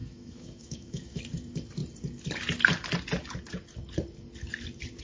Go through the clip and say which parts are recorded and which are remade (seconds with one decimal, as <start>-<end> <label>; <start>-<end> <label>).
0.0-1.2 remade; 1.2-5.0 recorded